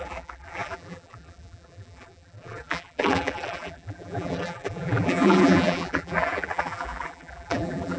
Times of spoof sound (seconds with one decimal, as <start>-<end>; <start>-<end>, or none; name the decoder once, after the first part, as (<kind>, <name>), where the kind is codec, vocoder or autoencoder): 0.0-8.0 (vocoder, BigVGAN v2)